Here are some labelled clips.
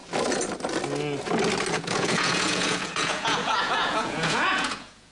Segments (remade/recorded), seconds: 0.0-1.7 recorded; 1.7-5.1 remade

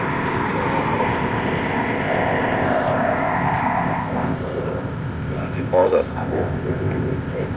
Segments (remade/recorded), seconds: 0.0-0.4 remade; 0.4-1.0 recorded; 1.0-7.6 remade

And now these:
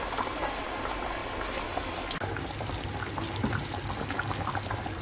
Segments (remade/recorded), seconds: 0.0-5.0 recorded

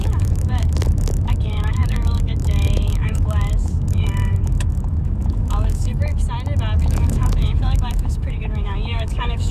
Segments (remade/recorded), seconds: 0.0-6.1 remade; 6.1-6.8 recorded; 6.8-9.5 remade

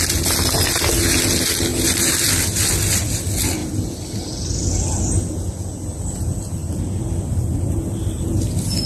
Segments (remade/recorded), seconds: 0.0-8.9 recorded

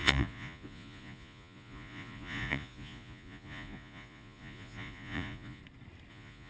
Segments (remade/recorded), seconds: 0.0-5.6 remade; 5.6-6.1 recorded; 6.1-6.5 remade

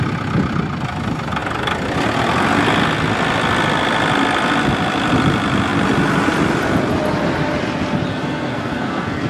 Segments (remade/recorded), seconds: 0.0-8.1 recorded; 8.1-9.3 remade

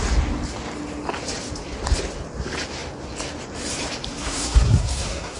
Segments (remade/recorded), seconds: 0.0-4.2 recorded; 4.2-5.4 remade